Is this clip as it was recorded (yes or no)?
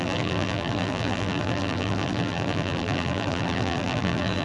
no